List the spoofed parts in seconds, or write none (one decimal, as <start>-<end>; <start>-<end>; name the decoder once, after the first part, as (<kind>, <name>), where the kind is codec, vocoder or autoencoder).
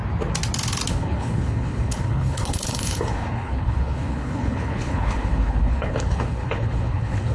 0.9-7.3 (codec, HILCodec)